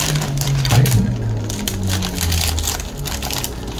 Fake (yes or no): no